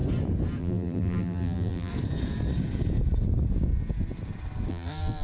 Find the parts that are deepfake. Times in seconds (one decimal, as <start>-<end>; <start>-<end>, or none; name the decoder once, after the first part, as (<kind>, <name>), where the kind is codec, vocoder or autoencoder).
0.6-1.9 (vocoder, BigVGAN v2); 4.7-5.2